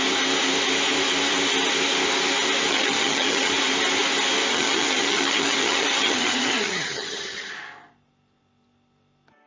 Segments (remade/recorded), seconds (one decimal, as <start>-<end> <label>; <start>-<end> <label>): 0.0-2.7 recorded; 2.7-3.5 remade; 3.5-4.5 recorded; 4.5-7.5 remade; 7.5-9.5 recorded